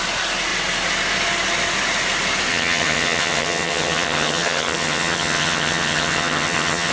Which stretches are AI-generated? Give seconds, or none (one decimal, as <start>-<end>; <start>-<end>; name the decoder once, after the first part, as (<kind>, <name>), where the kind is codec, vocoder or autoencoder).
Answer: 2.5-6.9 (vocoder, HiFi-GAN)